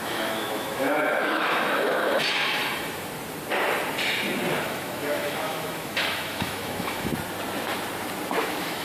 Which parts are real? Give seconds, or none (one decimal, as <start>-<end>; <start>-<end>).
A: 2.6-4.6; 7.1-8.4

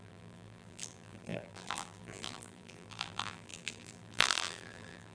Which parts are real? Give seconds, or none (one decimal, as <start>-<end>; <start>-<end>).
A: none

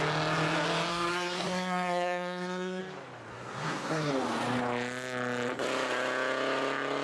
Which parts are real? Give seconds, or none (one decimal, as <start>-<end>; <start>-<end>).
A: 0.0-0.9; 2.8-3.3; 4.1-7.0

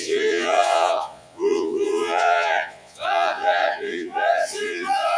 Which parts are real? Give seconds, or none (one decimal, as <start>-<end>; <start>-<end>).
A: none